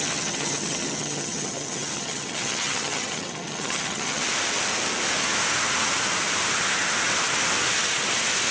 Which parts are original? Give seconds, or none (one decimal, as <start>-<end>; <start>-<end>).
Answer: 4.2-8.5